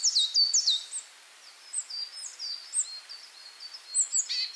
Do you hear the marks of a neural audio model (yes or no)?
no